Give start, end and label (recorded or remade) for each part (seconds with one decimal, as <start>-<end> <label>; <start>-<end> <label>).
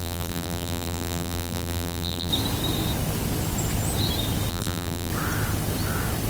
0.0-2.3 remade; 2.3-4.5 recorded; 4.5-5.1 remade; 5.1-6.3 recorded